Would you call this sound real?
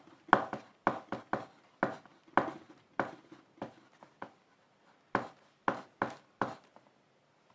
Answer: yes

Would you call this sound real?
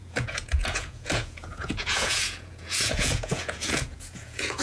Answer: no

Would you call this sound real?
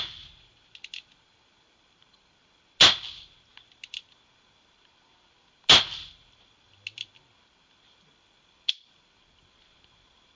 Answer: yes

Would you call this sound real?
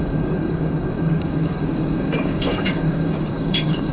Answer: no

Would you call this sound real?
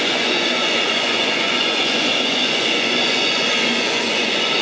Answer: no